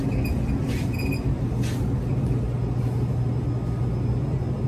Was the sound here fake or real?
real